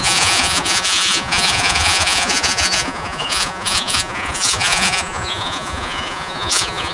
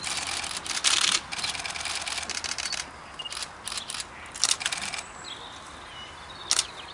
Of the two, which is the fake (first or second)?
first